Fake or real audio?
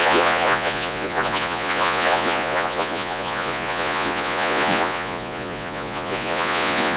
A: fake